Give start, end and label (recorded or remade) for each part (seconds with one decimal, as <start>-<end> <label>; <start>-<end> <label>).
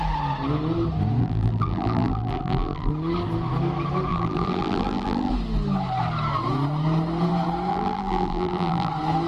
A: 0.0-1.2 recorded; 1.2-2.9 remade; 2.9-4.1 recorded; 4.1-5.3 remade; 5.3-7.7 recorded; 7.7-8.9 remade; 8.9-9.3 recorded